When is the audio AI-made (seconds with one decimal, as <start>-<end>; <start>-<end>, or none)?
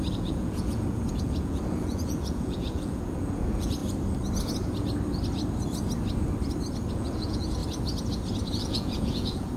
0.0-3.8; 6.9-7.6; 8.6-9.6